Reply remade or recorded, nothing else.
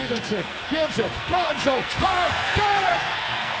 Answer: remade